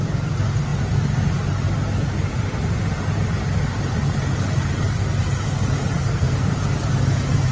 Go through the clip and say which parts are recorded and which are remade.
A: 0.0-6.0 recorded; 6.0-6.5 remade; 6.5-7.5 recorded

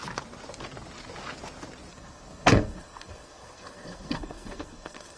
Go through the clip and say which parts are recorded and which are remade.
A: 0.0-1.9 recorded; 1.9-5.2 remade

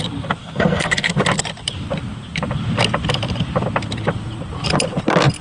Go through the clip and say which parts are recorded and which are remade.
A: 0.0-0.4 recorded; 0.4-1.1 remade; 1.1-5.4 recorded

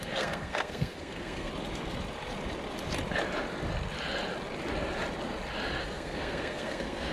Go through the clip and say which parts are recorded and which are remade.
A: 0.0-1.5 remade; 1.5-5.8 recorded; 5.8-7.1 remade

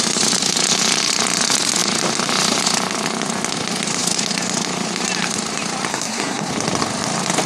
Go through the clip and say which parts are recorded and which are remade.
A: 0.0-5.9 recorded; 5.9-6.5 remade; 6.5-7.5 recorded

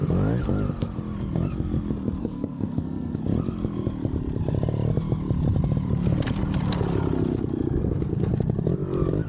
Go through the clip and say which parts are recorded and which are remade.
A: 0.0-2.2 recorded; 2.2-3.2 remade; 3.2-9.3 recorded

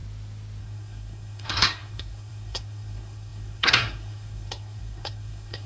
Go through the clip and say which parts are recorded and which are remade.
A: 0.0-0.6 recorded; 0.6-5.7 remade